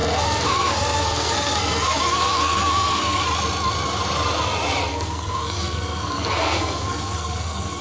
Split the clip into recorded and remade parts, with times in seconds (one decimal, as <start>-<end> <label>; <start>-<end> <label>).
0.0-3.2 remade; 3.2-4.9 recorded; 4.9-7.8 remade